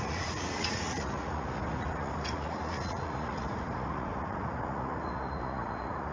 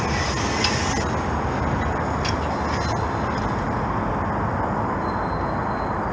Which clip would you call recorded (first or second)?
second